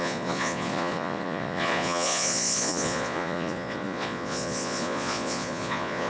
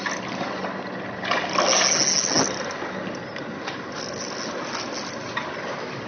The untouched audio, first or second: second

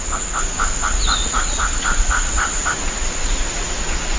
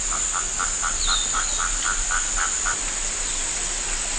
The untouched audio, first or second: second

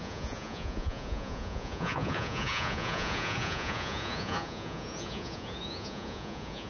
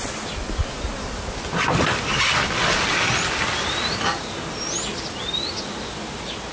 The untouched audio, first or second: second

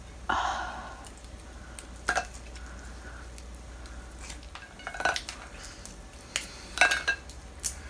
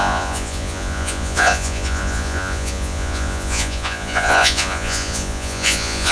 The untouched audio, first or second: first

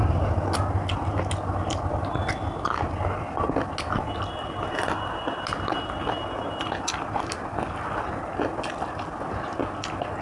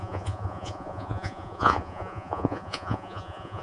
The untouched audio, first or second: first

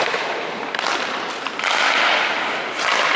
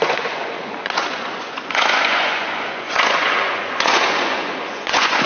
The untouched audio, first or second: first